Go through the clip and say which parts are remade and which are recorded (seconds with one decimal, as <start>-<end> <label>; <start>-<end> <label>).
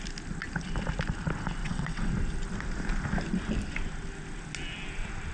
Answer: 0.0-1.6 recorded; 1.6-2.1 remade; 2.1-5.3 recorded